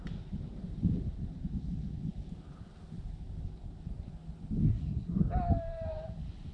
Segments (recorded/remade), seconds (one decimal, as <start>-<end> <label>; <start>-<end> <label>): 0.0-4.6 recorded; 4.6-5.2 remade; 5.2-6.5 recorded